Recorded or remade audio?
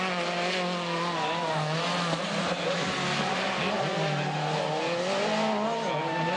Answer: recorded